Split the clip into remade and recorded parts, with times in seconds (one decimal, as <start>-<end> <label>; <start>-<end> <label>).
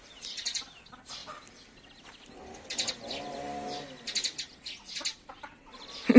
0.0-6.2 recorded